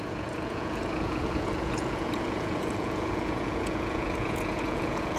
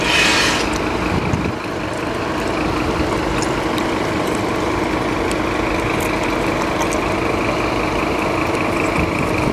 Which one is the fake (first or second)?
first